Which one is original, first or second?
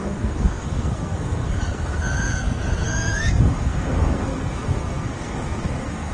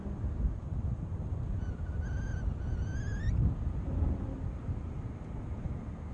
second